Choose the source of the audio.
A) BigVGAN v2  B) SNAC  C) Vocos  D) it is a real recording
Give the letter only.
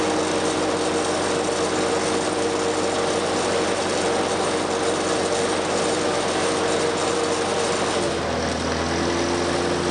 D